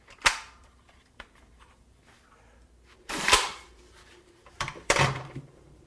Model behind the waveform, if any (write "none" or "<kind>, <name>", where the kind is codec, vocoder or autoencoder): vocoder, BigVGAN v2